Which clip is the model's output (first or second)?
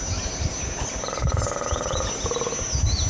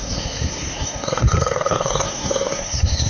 second